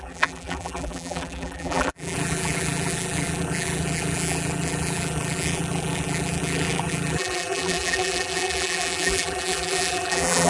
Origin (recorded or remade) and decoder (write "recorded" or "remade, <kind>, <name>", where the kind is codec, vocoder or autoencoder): remade, vocoder, BigVGAN v2